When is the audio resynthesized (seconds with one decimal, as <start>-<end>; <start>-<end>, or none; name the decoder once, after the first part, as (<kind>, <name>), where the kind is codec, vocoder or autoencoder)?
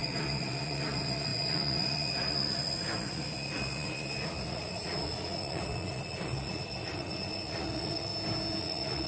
0.0-8.1 (vocoder, Vocos); 8.6-9.1